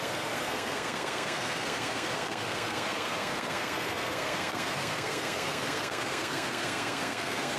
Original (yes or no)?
no